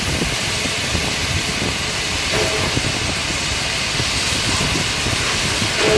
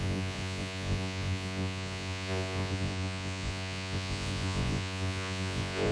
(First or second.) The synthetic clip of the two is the second